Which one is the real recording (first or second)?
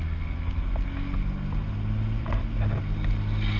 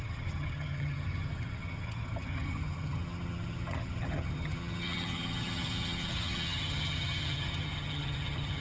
first